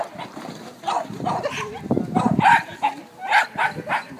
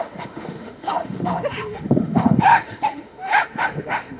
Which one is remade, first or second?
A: second